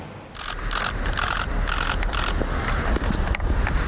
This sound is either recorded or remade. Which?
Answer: recorded